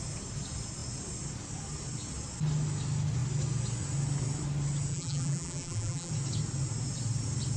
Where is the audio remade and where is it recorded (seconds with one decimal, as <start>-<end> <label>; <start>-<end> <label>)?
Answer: 0.0-4.9 recorded; 4.9-6.1 remade; 6.1-7.6 recorded